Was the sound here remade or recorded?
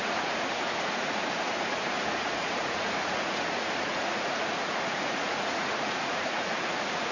remade